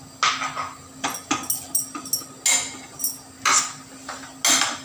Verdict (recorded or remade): recorded